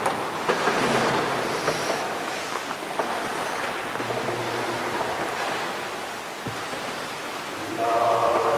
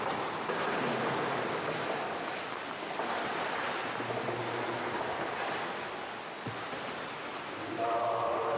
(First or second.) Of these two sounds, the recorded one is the first